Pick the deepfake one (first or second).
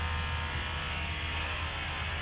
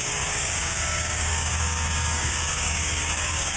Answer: second